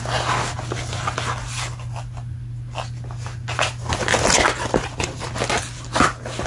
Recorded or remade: recorded